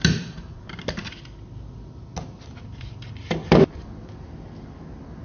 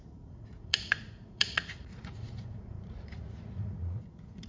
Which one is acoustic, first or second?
first